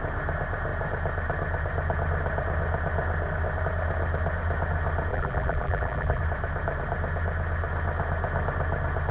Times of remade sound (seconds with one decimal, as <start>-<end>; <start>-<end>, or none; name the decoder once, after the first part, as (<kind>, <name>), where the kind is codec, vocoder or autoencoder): 5.1-6.2 (vocoder, BigVGAN v2)